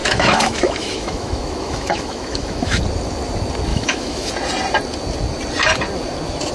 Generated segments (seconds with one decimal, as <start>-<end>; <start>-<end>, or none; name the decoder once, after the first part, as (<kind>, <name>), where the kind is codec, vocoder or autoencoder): 0.0-2.8 (autoencoder, DAC-VAE); 3.7-4.3

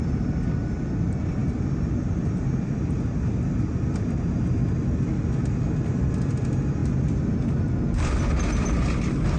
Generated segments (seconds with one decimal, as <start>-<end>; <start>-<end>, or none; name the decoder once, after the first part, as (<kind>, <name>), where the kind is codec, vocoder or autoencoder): none

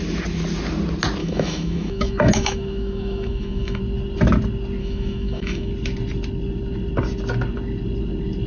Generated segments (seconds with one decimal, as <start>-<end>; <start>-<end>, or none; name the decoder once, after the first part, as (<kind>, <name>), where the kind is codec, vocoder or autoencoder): 1.2-3.8 (autoencoder, DAC-VAE); 4.8-5.7

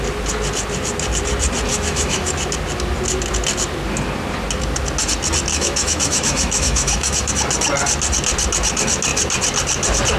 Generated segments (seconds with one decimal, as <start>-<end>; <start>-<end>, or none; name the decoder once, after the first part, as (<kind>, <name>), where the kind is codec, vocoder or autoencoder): 1.7-2.3 (autoencoder, DAC-VAE); 5.5-7.3

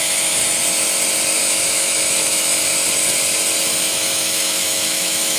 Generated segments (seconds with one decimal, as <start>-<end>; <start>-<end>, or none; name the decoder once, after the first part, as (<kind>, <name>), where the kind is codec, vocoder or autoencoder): 0.0-0.4 (autoencoder, DAC-VAE); 1.4-2.7; 3.7-5.4

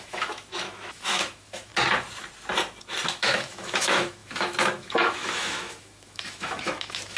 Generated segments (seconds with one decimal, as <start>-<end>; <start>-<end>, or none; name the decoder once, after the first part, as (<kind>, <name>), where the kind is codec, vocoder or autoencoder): 0.0-1.7 (autoencoder, DAC-VAE); 3.1-7.2